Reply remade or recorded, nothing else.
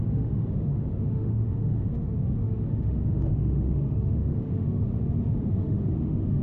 remade